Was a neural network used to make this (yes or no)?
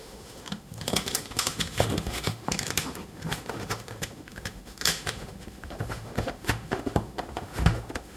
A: yes